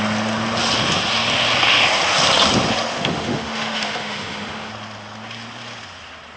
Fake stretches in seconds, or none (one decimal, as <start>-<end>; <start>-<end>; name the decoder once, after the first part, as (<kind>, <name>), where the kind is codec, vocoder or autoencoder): 2.9-4.7 (autoencoder, DAC-VAE)